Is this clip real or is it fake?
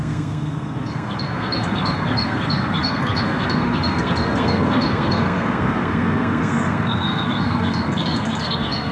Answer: fake